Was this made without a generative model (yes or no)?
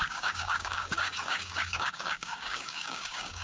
no